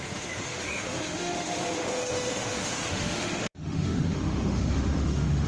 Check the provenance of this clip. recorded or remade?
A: remade